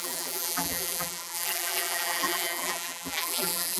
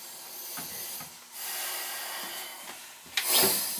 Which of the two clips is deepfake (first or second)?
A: first